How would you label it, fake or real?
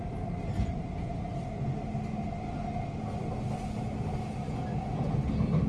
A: real